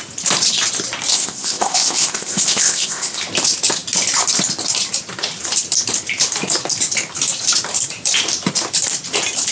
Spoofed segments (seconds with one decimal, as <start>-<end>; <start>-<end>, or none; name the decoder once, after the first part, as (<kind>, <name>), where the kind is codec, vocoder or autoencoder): 1.1-3.2 (codec, ZipCodec)